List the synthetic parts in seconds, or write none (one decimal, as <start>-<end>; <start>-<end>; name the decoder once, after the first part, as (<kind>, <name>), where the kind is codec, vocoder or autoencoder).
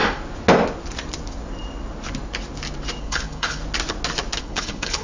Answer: 3.0-3.6 (codec, HILCodec); 4.4-5.0